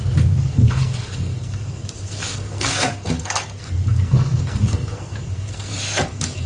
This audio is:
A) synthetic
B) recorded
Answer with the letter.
A